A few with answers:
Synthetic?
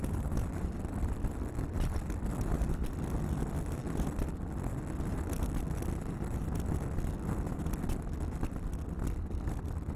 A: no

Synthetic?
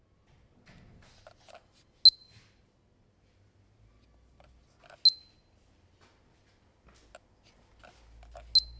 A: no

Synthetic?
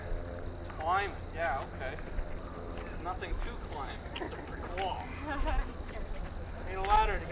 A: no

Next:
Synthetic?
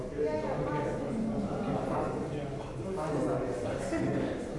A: no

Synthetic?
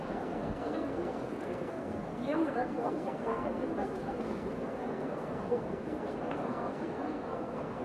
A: yes